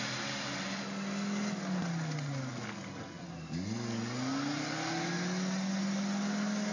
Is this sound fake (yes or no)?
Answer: no